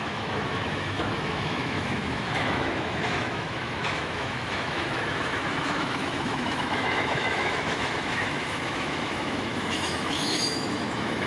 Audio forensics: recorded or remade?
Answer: remade